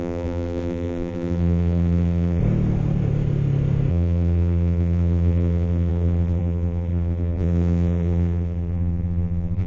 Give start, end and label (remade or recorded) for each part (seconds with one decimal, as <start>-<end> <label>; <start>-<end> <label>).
0.0-2.4 remade; 2.4-3.9 recorded; 3.9-9.7 remade